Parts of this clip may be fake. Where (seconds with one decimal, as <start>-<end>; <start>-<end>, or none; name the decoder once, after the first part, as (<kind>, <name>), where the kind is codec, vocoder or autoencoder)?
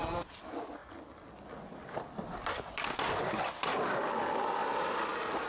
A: none